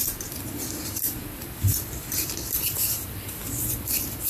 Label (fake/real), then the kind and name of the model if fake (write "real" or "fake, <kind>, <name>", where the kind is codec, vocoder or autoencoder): fake, vocoder, BigVGAN v2